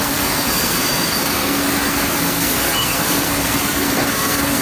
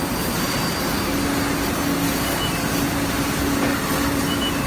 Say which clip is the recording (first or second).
second